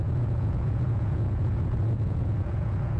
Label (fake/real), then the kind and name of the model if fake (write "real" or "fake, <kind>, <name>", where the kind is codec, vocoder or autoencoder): fake, vocoder, Vocos